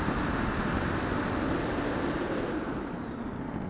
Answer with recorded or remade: recorded